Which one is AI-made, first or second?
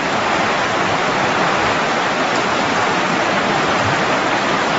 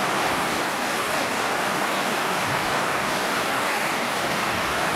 second